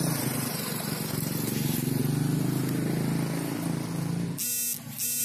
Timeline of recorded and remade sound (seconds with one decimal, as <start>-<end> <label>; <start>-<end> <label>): 0.0-2.0 remade; 2.0-5.2 recorded